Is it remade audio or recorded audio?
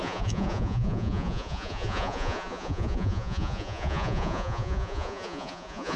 remade